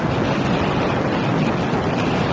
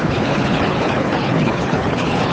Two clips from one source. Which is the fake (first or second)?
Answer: second